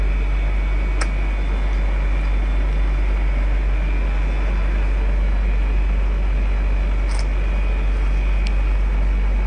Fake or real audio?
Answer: real